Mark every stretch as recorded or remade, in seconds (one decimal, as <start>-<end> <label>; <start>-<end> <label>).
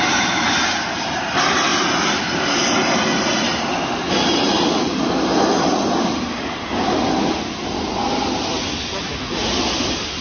0.0-10.2 recorded